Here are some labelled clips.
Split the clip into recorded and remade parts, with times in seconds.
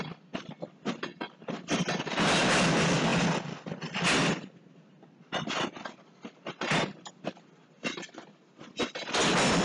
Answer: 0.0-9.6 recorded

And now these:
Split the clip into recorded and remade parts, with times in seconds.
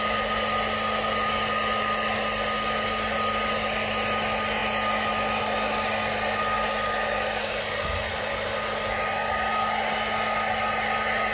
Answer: 0.0-11.3 recorded